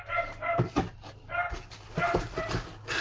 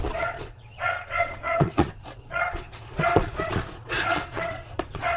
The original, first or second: first